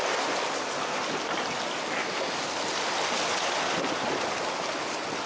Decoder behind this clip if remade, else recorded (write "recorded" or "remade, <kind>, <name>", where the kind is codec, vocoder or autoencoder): recorded